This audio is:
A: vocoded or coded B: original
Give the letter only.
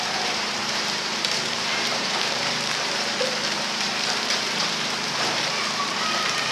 A